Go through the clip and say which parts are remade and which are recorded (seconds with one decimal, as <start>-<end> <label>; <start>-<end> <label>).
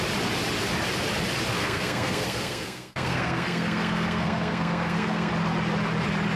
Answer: 0.0-1.5 recorded; 1.5-5.3 remade; 5.3-6.4 recorded